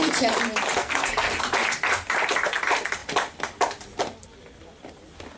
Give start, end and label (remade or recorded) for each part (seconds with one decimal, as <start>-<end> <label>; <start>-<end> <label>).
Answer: 0.0-0.8 recorded; 0.8-1.4 remade; 1.4-5.4 recorded

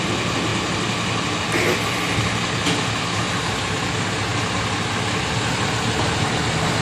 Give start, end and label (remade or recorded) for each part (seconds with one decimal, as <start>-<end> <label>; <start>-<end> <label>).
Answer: 0.0-6.8 recorded